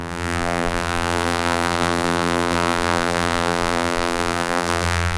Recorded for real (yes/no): no